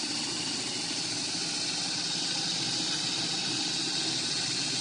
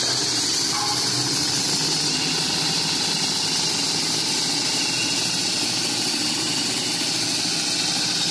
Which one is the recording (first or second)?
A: second